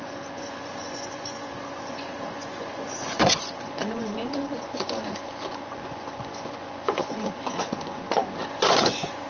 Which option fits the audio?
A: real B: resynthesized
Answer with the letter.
B